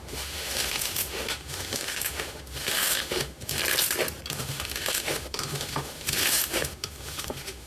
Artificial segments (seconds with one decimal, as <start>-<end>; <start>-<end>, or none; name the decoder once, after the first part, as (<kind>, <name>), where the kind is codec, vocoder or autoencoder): 0.0-3.6 (autoencoder, DAC-VAE); 4.3-7.7